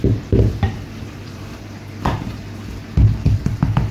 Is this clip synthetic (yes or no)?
yes